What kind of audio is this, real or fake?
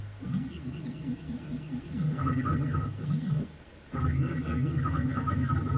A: fake